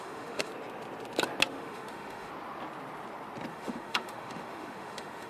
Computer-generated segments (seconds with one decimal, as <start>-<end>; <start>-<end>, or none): 0.0-0.5; 1.5-2.3; 3.5-5.3